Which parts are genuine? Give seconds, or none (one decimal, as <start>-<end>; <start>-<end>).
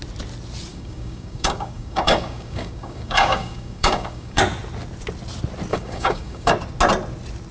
0.0-0.7; 4.4-5.7; 6.5-7.5